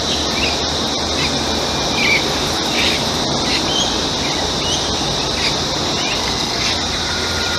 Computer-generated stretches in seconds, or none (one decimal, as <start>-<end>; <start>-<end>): 6.2-6.7